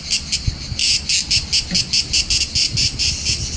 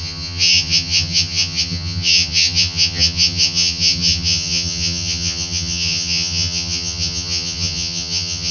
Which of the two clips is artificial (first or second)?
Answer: second